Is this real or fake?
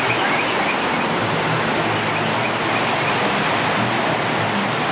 real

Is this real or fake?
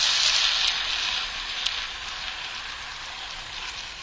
real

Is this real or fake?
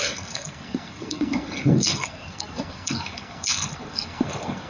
fake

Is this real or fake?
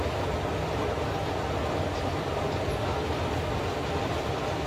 real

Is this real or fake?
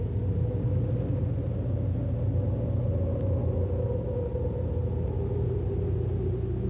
real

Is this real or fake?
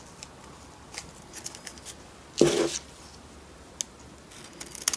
real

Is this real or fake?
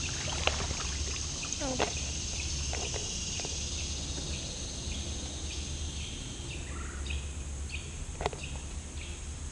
real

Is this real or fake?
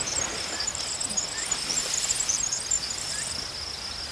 real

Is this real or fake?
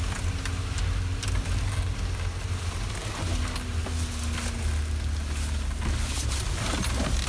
real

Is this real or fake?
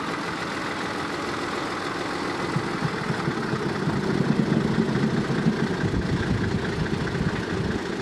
real